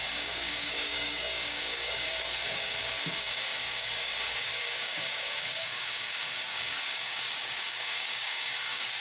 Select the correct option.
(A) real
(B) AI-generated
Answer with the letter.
B